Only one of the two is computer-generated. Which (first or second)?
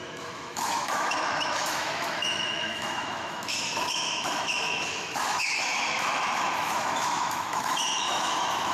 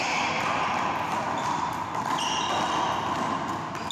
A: first